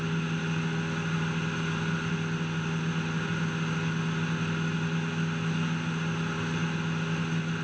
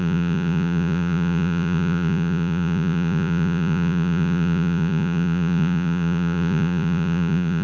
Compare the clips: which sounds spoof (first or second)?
second